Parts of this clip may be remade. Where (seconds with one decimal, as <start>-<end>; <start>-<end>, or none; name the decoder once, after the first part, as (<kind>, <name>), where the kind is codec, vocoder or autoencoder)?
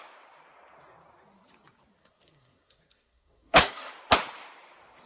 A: 2.0-3.9 (codec, SNAC)